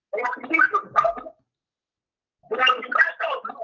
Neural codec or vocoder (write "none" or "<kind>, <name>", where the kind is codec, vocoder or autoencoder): none